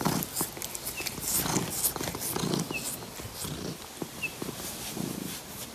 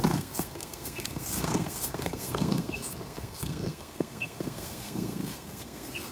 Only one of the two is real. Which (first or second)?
first